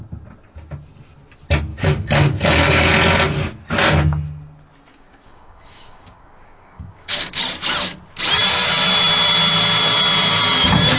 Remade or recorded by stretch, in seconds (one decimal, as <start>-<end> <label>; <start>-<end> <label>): 0.0-1.7 recorded; 1.7-2.9 remade; 2.9-4.9 recorded; 4.9-7.4 remade; 7.4-11.0 recorded